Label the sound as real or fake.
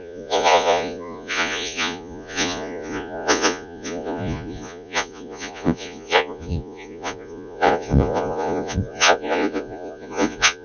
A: fake